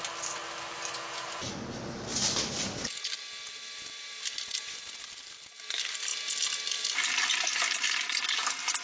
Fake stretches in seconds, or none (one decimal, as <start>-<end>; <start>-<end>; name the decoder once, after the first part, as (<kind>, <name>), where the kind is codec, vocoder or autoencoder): none